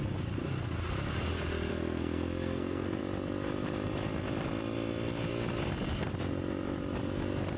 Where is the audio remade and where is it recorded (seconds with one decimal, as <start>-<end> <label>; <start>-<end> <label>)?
0.0-1.7 recorded; 1.7-3.0 remade; 3.0-7.6 recorded